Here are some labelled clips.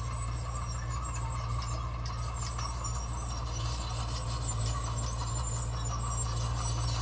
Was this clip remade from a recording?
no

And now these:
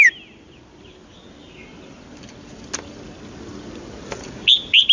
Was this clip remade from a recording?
no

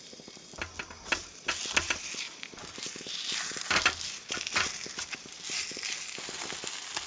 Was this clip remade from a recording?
no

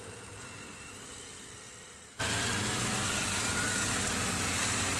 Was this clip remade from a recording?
no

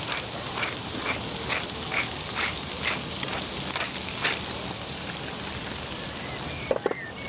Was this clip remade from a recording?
no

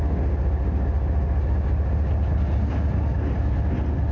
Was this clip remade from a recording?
no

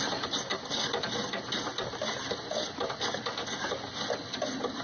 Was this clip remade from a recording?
no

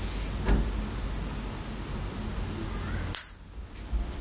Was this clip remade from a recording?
no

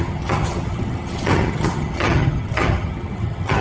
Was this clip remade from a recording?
yes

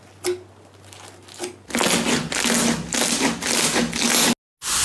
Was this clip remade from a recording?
no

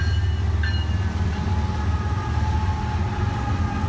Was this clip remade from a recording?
no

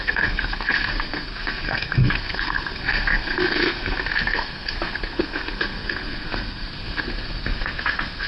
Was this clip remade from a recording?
yes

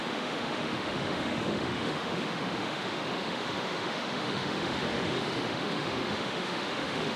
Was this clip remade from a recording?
yes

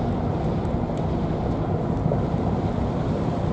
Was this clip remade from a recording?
no